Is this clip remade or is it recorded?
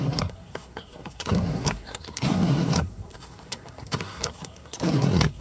remade